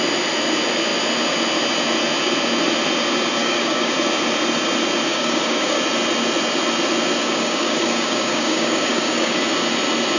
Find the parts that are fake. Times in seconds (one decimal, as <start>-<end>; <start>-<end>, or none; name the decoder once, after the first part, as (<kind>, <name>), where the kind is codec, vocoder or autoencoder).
3.4-3.9 (codec, DAC); 5.1-5.8; 7.2-9.5